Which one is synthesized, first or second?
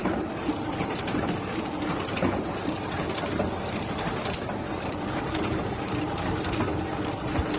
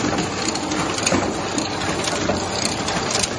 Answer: first